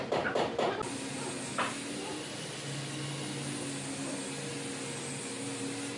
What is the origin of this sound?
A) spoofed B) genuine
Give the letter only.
B